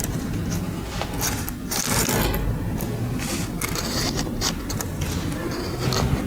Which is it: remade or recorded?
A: recorded